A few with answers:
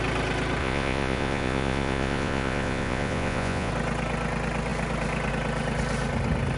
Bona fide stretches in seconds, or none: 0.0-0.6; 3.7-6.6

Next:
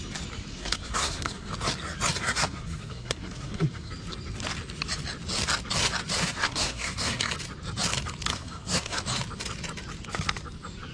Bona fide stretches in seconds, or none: 0.0-0.5; 1.5-2.2; 3.9-6.2; 7.3-8.3; 9.0-10.9

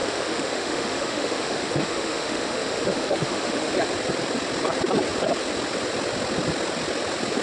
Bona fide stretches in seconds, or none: 3.7-7.4

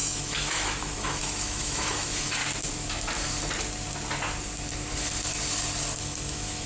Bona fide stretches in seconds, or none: 2.4-6.0

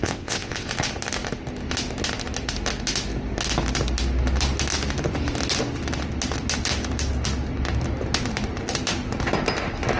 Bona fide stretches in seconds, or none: 0.7-10.0

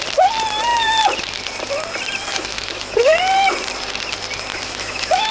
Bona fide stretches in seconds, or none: 0.0-2.3; 3.2-4.5